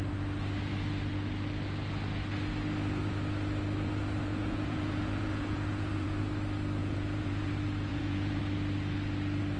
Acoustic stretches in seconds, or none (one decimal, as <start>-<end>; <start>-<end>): 0.0-4.3; 6.2-6.8; 7.5-7.9; 8.4-9.6